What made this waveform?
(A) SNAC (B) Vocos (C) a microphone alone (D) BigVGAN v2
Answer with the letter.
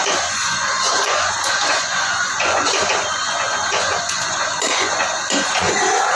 B